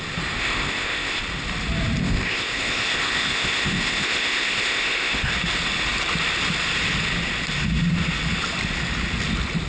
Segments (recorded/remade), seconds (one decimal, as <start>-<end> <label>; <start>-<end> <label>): 0.0-0.4 recorded; 0.4-1.2 remade; 1.2-2.0 recorded; 2.0-5.3 remade; 5.3-9.7 recorded